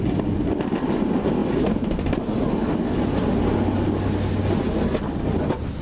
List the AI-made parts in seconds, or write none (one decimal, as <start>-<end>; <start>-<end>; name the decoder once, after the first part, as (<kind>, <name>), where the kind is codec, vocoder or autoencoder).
none